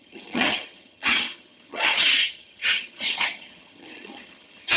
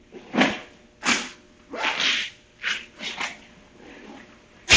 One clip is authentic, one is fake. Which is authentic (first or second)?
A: second